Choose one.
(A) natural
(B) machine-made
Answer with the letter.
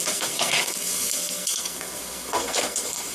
B